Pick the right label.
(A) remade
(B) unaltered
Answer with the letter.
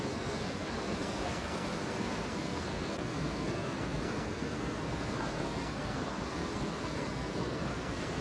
A